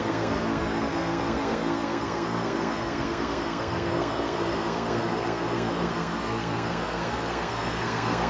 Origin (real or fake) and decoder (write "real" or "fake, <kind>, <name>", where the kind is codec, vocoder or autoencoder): fake, codec, SNAC